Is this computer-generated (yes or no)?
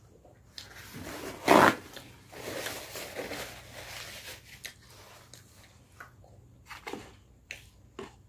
no